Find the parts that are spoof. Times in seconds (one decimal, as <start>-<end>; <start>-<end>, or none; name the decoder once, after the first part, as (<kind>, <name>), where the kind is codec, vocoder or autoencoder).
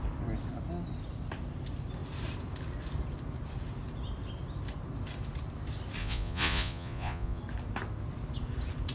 6.0-7.4 (vocoder, Vocos)